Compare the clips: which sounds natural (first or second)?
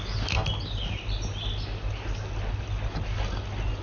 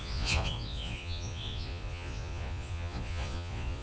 first